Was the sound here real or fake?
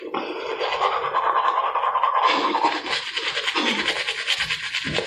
real